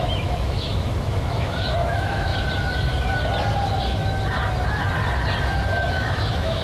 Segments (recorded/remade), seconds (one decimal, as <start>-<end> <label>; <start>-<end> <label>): 0.0-2.3 remade; 2.3-5.9 recorded; 5.9-6.6 remade